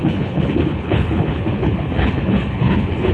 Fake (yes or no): yes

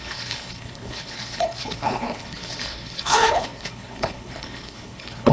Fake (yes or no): yes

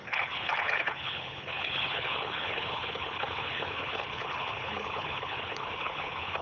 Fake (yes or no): yes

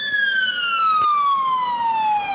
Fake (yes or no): no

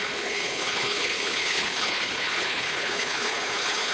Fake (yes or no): yes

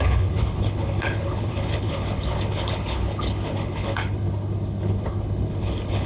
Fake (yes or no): yes